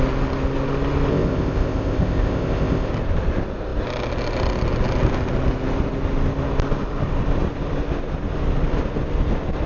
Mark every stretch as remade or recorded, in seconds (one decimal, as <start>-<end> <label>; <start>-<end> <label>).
0.0-1.1 recorded; 1.1-2.9 remade; 2.9-9.7 recorded